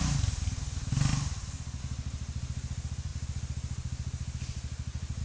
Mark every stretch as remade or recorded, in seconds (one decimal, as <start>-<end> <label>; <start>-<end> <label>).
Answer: 0.0-5.2 recorded